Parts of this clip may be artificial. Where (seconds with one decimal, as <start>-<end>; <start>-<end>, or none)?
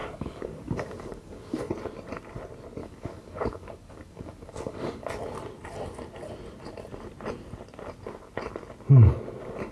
0.0-1.7; 2.8-5.1